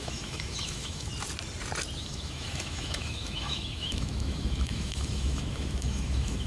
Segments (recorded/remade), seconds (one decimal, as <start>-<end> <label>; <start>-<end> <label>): 0.0-1.1 remade; 1.1-2.0 recorded; 2.0-6.5 remade